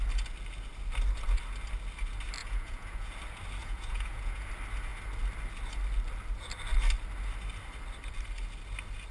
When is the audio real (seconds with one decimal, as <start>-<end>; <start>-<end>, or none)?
0.0-2.4; 3.1-3.6; 4.5-9.1